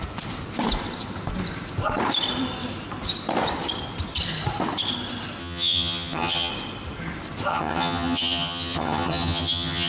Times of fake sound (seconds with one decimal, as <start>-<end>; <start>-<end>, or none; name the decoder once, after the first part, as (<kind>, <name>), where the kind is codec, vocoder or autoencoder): 5.4-6.5 (vocoder, HiFi-GAN); 7.5-9.9